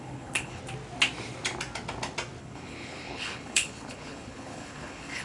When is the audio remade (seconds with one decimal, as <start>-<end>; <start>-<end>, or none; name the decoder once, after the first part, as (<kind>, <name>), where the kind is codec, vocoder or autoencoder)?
0.0-0.6 (codec, HILCodec); 2.4-5.2

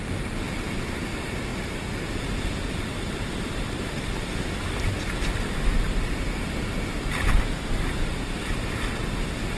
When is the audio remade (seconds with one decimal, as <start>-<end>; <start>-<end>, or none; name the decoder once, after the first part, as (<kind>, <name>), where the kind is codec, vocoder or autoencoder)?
none